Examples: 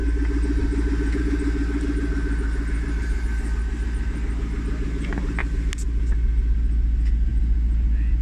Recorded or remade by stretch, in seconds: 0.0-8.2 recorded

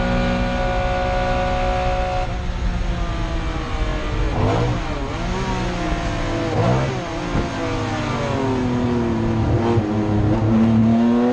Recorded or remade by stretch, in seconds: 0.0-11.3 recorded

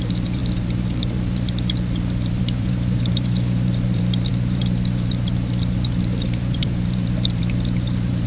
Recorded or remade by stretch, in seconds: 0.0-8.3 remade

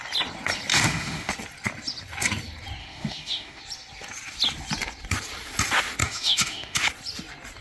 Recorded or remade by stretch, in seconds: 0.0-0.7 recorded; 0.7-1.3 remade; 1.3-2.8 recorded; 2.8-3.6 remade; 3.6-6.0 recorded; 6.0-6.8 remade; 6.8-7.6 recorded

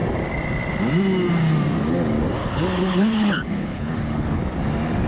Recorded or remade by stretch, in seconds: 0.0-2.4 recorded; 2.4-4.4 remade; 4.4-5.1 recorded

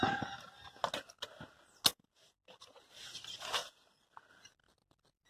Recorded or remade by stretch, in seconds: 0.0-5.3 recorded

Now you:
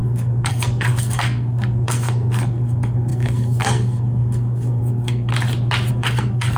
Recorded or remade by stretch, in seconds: 0.0-5.3 remade; 5.3-5.9 recorded; 5.9-6.6 remade